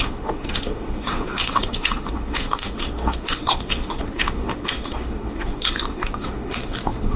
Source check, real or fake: fake